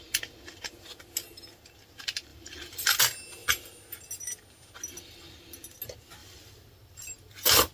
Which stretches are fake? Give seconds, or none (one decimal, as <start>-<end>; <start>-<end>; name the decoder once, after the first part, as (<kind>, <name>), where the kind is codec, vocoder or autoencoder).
2.3-3.0 (vocoder, BigVGAN v2); 6.2-7.7